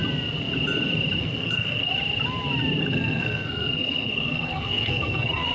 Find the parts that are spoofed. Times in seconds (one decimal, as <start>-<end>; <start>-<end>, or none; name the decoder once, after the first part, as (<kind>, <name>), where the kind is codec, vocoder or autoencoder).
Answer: 1.2-1.9 (codec, SNAC); 2.8-5.5